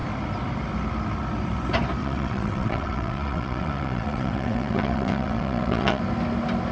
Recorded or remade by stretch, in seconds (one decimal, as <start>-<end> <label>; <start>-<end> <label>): 0.0-2.0 recorded; 2.0-6.0 remade; 6.0-6.7 recorded